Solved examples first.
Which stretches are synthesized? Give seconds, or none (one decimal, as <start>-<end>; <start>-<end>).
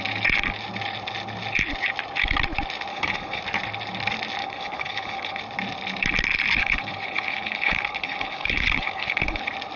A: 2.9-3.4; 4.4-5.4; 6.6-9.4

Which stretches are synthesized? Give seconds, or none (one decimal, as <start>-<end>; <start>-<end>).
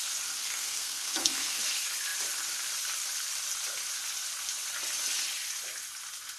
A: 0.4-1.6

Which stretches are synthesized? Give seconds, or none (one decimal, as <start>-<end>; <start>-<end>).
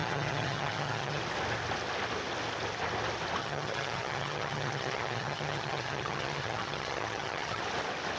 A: 0.0-1.2; 3.4-7.6